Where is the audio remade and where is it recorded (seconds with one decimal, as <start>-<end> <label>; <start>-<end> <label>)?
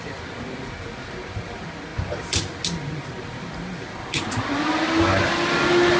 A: 0.0-6.0 recorded